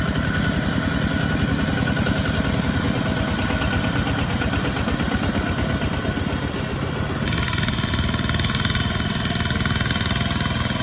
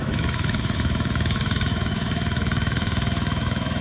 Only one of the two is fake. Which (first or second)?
second